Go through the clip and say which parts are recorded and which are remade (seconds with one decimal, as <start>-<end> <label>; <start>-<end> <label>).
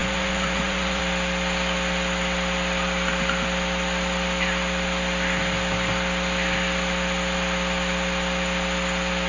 0.0-1.0 remade; 1.0-9.3 recorded